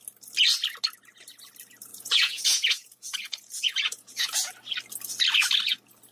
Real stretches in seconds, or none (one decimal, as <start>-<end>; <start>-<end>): 0.0-1.9; 4.5-6.1